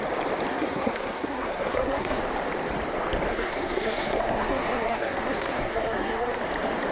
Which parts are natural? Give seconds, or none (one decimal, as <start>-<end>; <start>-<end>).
0.0-0.5; 2.2-3.3; 6.4-6.9